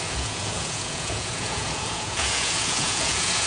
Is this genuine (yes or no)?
no